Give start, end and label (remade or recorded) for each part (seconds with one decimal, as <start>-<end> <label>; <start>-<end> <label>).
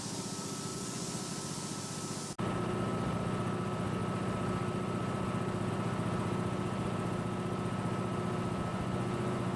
0.0-0.7 recorded; 0.7-1.3 remade; 1.3-8.7 recorded; 8.7-9.6 remade